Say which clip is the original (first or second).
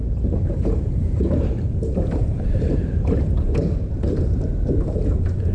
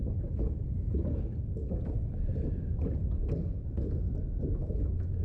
second